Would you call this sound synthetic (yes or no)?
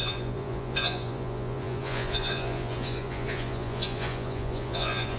yes